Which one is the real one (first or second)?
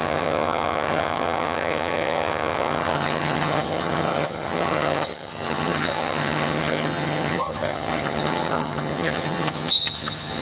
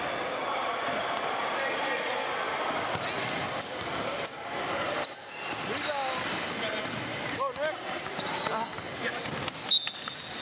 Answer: second